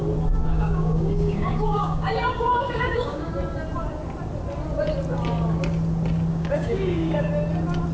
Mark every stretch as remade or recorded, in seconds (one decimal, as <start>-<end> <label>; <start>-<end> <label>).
0.0-0.4 recorded; 0.4-3.3 remade; 3.3-6.3 recorded; 6.3-7.3 remade; 7.3-7.9 recorded